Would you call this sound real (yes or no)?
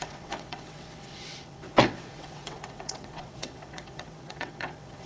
no